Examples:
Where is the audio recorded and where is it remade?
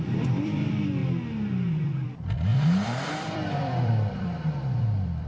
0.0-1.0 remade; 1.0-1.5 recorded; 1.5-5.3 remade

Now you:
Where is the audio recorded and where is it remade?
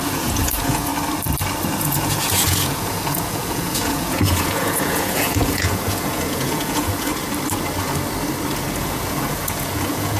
0.0-0.9 remade; 0.9-1.8 recorded; 1.8-7.1 remade; 7.1-8.8 recorded; 8.8-10.2 remade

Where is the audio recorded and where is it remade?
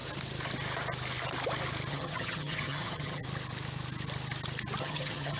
0.0-1.9 recorded; 1.9-3.2 remade; 3.2-4.8 recorded; 4.8-5.4 remade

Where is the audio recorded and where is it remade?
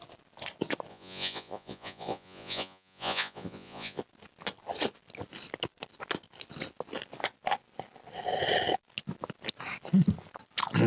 0.0-0.9 recorded; 0.9-4.0 remade; 4.0-10.9 recorded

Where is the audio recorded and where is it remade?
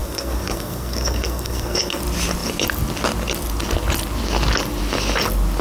0.0-2.0 remade; 2.0-5.6 recorded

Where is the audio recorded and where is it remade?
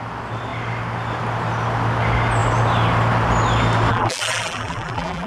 0.0-3.9 recorded; 3.9-5.3 remade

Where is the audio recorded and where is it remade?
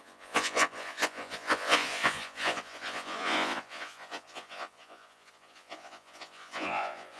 0.0-7.2 remade